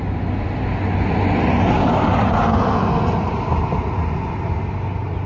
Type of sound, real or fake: real